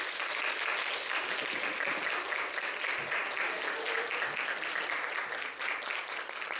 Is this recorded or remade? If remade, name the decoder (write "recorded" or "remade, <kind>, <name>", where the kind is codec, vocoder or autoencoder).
recorded